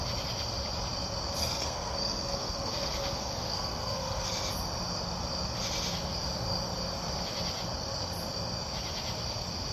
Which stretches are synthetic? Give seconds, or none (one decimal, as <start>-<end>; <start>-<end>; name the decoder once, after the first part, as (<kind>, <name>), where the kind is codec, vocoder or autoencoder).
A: 1.4-4.3 (codec, SNAC)